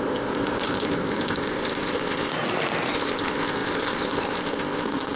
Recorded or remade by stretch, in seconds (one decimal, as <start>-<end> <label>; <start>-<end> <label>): 0.0-2.3 remade; 2.3-2.9 recorded; 2.9-5.2 remade